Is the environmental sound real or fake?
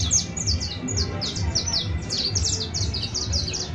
real